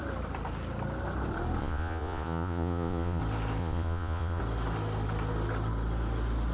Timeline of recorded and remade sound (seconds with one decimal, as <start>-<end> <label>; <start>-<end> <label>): 0.0-1.6 recorded; 1.6-3.2 remade; 3.2-3.6 recorded; 3.6-4.4 remade; 4.4-6.5 recorded

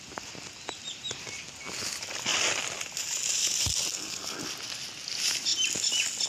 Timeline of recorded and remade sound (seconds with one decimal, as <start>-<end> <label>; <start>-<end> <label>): 0.0-3.9 recorded; 3.9-4.4 remade; 4.4-6.3 recorded